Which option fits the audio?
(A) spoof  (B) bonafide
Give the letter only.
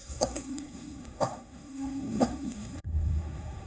A